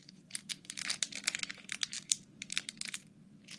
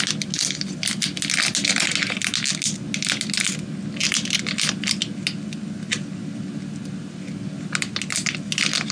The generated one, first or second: first